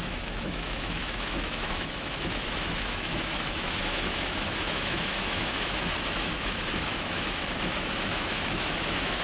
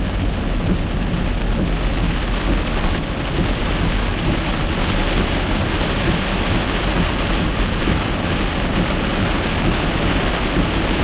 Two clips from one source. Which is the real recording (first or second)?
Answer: second